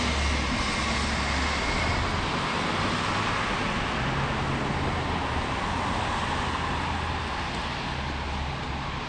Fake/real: real